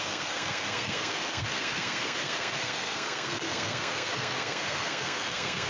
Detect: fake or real fake